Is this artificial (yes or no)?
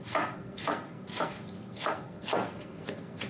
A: yes